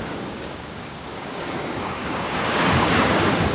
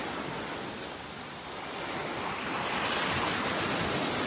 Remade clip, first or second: first